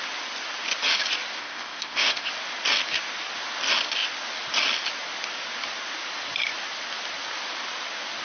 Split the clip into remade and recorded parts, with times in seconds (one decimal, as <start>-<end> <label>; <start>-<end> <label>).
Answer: 0.0-1.4 recorded; 1.4-2.3 remade; 2.3-8.2 recorded